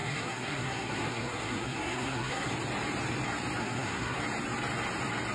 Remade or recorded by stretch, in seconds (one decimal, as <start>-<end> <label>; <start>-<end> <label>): 0.0-2.5 remade; 2.5-3.6 recorded; 3.6-4.2 remade; 4.2-5.3 recorded